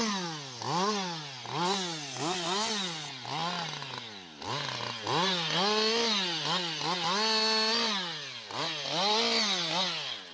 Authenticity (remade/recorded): recorded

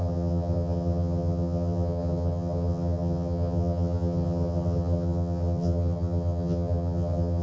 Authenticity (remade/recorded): remade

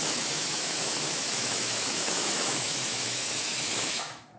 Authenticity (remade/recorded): remade